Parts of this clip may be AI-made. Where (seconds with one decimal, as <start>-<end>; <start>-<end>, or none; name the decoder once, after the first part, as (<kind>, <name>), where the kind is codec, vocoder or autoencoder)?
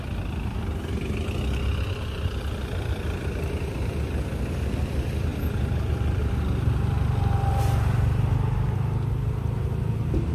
none